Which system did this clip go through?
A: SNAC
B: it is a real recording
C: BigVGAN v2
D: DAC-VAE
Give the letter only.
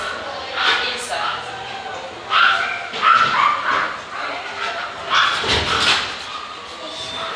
B